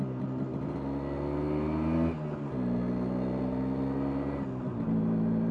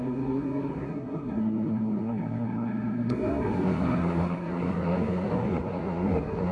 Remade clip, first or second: second